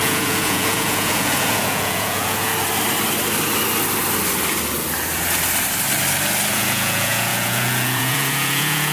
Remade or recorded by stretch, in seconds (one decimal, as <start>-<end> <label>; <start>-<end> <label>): 0.0-2.5 remade; 2.5-6.5 recorded; 6.5-8.9 remade